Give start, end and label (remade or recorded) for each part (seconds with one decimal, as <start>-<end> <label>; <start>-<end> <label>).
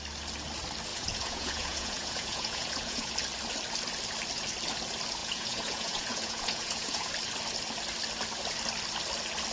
0.0-0.9 recorded; 0.9-3.1 remade; 3.1-5.2 recorded; 5.2-7.1 remade; 7.1-9.5 recorded